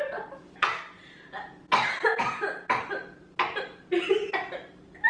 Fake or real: real